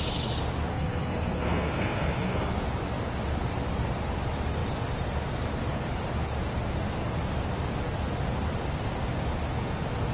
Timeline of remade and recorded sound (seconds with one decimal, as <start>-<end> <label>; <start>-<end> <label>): 0.0-0.7 recorded; 0.7-2.5 remade; 2.5-10.1 recorded